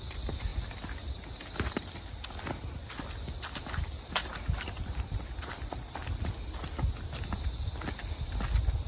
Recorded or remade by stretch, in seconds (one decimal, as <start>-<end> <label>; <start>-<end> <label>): 0.0-8.9 recorded